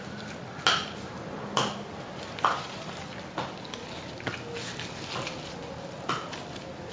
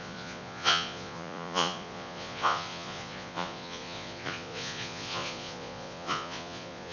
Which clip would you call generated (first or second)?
second